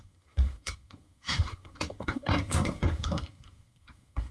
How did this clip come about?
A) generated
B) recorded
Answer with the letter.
A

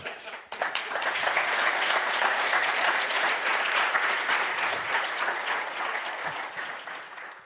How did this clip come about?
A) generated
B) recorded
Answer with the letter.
A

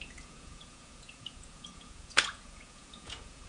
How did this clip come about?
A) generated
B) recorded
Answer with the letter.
A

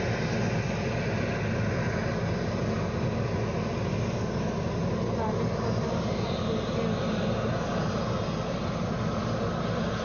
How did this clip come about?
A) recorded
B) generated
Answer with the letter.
A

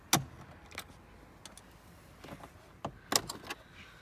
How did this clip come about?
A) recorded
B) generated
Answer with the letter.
A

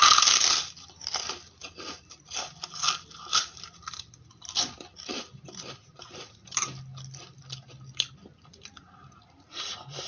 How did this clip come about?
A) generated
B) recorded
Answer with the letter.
A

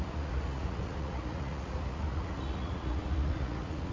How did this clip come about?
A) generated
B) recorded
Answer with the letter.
A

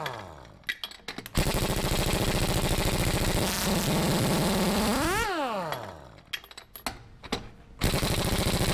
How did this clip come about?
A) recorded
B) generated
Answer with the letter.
A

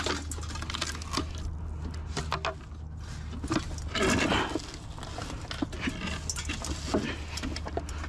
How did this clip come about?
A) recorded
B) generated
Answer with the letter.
A